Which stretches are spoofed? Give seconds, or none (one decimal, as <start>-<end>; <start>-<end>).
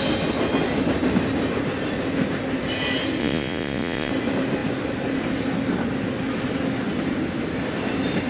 3.2-4.1